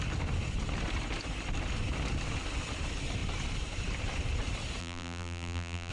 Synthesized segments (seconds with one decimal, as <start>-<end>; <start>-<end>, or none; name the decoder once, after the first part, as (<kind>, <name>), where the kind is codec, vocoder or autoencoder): 4.8-5.9 (vocoder, BigVGAN v2)